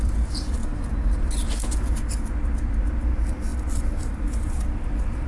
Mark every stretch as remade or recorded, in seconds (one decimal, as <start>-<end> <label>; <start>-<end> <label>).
0.0-0.6 remade; 0.6-2.0 recorded; 2.0-5.3 remade

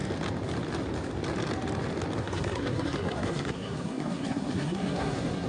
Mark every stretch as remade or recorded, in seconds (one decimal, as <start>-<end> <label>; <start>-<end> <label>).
0.0-2.2 recorded; 2.2-5.5 remade

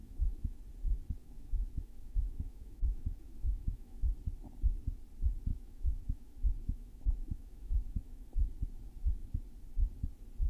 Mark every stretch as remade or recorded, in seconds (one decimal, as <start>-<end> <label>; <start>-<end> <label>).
0.0-0.6 remade; 0.6-1.2 recorded; 1.2-4.0 remade; 4.0-5.5 recorded; 5.5-8.3 remade; 8.3-10.5 recorded

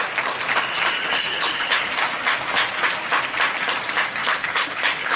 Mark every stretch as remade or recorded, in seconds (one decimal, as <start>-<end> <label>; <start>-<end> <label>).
0.0-1.3 recorded; 1.3-1.9 remade; 1.9-4.2 recorded; 4.2-5.2 remade

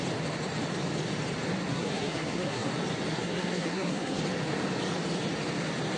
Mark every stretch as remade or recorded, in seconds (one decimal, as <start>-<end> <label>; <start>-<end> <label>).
0.0-1.7 recorded; 1.7-2.7 remade; 2.7-3.1 recorded; 3.1-4.2 remade; 4.2-6.0 recorded

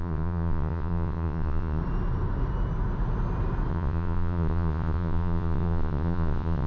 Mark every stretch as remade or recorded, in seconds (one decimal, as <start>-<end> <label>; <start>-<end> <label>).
0.0-1.8 remade; 1.8-3.7 recorded; 3.7-6.7 remade

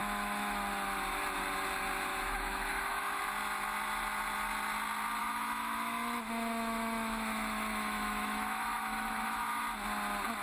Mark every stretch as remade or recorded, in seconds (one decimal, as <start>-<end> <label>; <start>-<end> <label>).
0.0-0.7 remade; 0.7-2.1 recorded; 2.1-3.2 remade; 3.2-5.2 recorded; 5.2-9.6 remade; 9.6-10.4 recorded

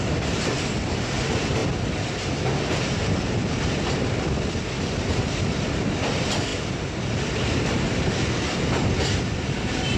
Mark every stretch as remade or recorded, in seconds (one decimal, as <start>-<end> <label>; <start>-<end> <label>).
0.0-1.6 remade; 1.6-5.2 recorded; 5.2-10.0 remade